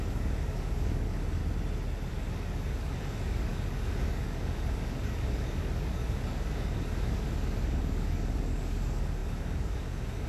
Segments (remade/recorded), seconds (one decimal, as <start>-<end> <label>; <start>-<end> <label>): 0.0-1.4 remade; 1.4-2.1 recorded; 2.1-10.3 remade